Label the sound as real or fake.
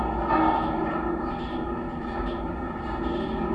real